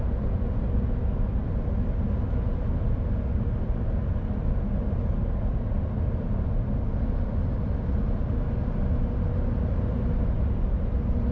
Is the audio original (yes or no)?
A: yes